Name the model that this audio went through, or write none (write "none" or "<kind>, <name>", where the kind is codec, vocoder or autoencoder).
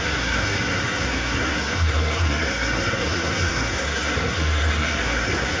codec, SNAC